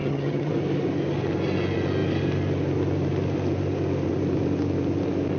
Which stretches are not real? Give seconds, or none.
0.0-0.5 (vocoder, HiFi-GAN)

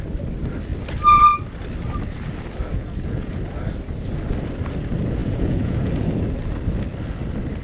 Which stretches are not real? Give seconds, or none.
2.7-3.4 (vocoder, Vocos); 5.2-5.9

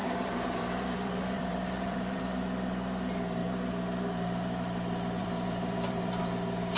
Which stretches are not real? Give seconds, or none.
0.0-2.2 (vocoder, BigVGAN v2); 5.2-6.2

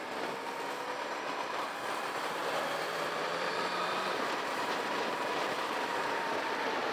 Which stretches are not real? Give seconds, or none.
0.0-6.9 (vocoder, BigVGAN v2)

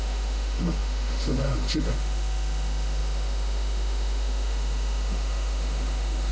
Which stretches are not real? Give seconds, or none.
0.0-6.3 (autoencoder, DAC-VAE)

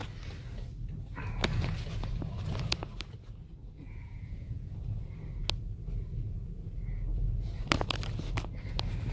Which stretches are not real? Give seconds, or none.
3.6-4.8 (vocoder, Vocos)